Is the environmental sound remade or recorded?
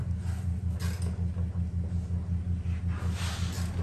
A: recorded